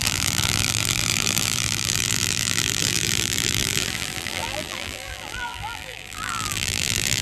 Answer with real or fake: fake